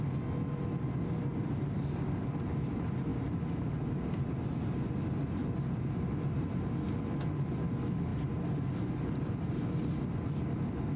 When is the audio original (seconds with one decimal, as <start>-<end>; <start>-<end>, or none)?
0.0-1.3; 2.2-5.4; 6.5-11.0